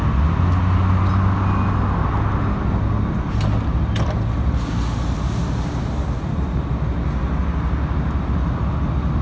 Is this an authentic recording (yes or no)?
yes